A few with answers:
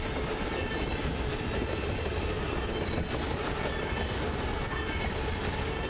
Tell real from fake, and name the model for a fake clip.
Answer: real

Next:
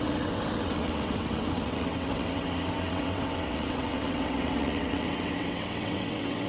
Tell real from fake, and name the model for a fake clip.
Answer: fake, vocoder, WaveNeXt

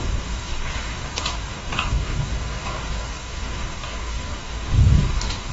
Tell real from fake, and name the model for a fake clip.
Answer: fake, codec, DAC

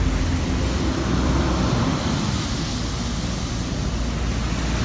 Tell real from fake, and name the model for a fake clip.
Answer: real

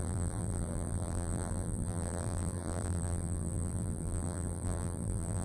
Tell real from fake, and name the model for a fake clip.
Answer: fake, vocoder, BigVGAN v2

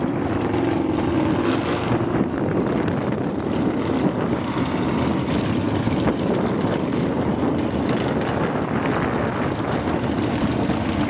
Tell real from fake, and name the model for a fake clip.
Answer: real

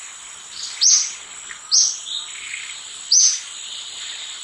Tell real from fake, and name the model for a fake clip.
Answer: real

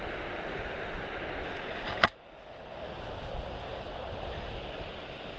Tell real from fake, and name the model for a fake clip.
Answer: real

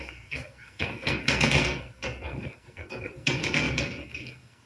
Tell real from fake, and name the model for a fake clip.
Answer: fake, codec, SNAC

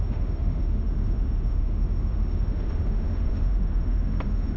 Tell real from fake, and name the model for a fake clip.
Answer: fake, autoencoder, DAC-VAE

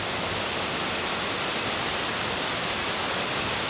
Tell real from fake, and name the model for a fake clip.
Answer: real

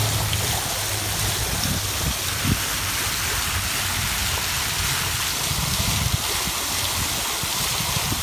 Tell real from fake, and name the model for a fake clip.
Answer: real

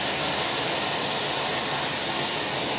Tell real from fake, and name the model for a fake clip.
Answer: real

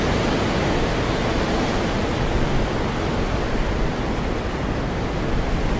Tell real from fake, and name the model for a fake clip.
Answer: real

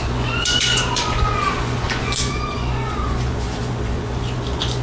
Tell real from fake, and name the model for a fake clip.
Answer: fake, vocoder, Vocos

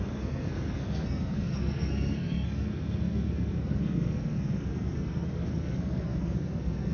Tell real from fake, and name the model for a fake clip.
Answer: fake, codec, SNAC